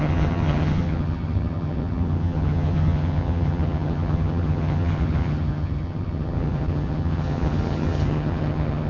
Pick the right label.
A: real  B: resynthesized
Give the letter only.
B